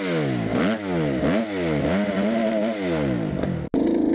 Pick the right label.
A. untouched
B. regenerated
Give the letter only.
A